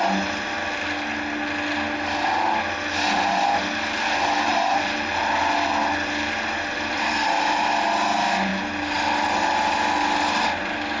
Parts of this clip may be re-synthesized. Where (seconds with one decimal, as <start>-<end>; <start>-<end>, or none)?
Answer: 6.9-7.6